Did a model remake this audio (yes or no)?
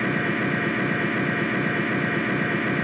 no